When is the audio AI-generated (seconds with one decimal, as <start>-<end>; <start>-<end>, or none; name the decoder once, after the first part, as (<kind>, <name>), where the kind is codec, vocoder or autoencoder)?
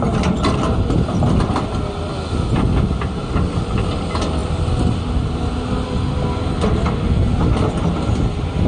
none